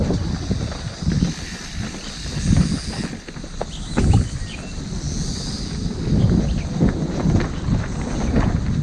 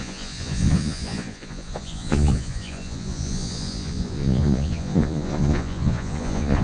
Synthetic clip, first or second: second